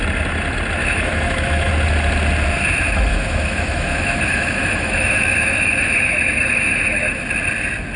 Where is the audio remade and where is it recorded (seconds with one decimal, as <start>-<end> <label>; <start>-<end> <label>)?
0.0-0.8 recorded; 0.8-1.7 remade; 1.7-3.1 recorded; 3.1-7.2 remade; 7.2-8.0 recorded